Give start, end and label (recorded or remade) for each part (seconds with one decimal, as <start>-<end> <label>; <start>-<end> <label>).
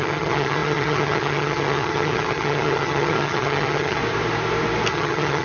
0.0-4.0 remade; 4.0-4.9 recorded; 4.9-5.4 remade